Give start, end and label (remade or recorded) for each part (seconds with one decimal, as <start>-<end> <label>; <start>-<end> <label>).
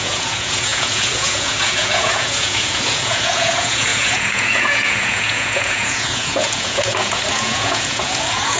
0.0-8.6 remade